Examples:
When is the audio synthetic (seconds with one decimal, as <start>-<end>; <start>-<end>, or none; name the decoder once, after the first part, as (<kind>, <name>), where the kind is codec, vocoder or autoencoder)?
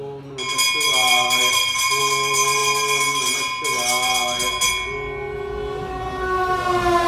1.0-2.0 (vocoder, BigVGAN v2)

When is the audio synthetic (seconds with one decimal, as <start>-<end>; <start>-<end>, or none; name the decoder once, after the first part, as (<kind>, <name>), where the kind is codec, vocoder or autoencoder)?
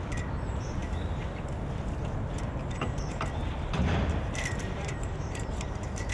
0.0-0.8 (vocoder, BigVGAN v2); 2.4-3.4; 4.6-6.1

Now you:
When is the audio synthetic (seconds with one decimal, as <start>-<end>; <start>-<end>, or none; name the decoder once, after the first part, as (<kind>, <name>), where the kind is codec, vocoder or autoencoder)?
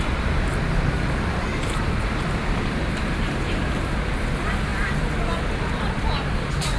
0.5-3.5 (vocoder, BigVGAN v2)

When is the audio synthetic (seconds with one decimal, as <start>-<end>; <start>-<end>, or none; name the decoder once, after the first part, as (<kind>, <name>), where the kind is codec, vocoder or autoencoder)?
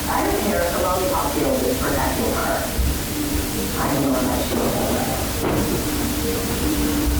0.0-2.4 (vocoder, BigVGAN v2); 3.3-5.1; 6.2-7.2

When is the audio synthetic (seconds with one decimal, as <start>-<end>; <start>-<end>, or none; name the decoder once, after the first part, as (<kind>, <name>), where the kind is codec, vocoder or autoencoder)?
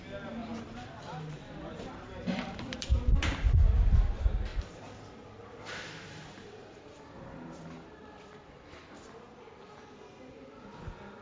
0.4-3.2 (vocoder, BigVGAN v2); 4.5-6.8